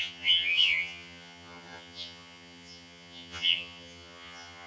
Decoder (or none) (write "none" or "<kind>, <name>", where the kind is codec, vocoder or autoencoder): vocoder, HiFi-GAN